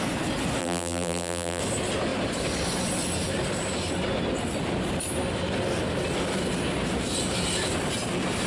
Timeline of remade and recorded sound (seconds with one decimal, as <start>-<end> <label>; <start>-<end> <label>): 0.0-0.6 recorded; 0.6-1.6 remade; 1.6-8.5 recorded